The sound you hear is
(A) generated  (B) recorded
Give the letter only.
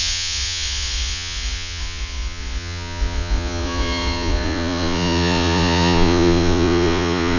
A